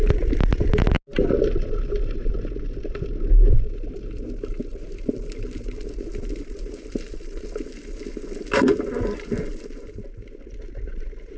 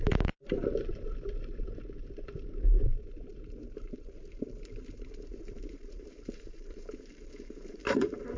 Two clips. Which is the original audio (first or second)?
first